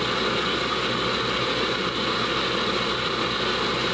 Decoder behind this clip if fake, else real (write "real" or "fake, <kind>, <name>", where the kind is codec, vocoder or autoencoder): real